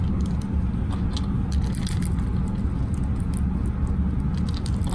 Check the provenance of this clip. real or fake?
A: real